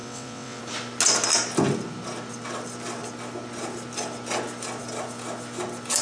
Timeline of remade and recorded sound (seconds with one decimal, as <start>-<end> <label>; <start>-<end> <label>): 0.0-0.6 remade; 0.6-6.0 recorded